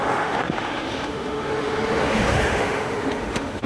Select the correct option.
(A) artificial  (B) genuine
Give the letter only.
A